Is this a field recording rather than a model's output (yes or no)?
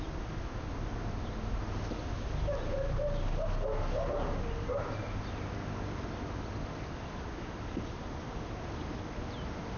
yes